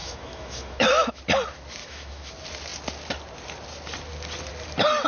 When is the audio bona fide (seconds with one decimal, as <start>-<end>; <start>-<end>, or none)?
1.2-1.8; 2.3-5.1